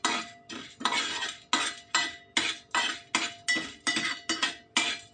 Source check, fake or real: real